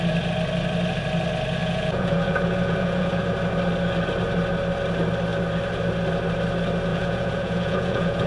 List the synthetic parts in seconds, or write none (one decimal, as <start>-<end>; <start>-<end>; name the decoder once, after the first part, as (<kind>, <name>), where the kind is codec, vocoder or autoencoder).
1.6-3.2 (vocoder, Vocos); 6.9-8.3